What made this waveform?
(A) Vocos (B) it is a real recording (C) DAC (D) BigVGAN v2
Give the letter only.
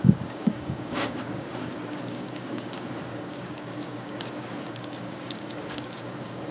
C